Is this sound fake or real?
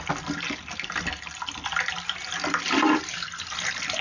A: real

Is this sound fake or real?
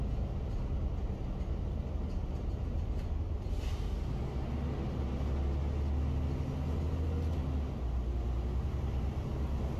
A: real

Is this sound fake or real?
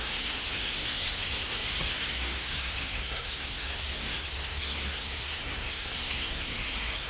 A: fake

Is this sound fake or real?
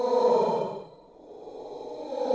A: real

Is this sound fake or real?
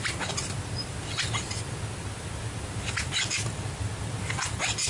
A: real